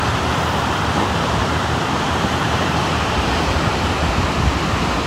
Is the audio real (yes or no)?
no